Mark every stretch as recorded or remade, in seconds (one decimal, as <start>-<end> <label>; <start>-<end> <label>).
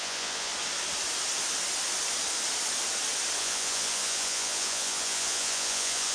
0.0-0.5 remade; 0.5-3.4 recorded; 3.4-6.1 remade